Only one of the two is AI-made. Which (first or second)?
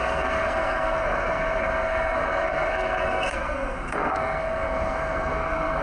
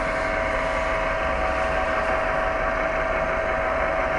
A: first